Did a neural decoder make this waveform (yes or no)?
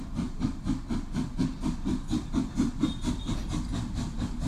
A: no